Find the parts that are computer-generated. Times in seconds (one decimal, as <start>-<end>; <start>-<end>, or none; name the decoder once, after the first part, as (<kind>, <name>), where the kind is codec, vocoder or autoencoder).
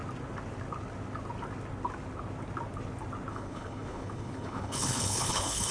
3.3-5.7 (codec, HILCodec)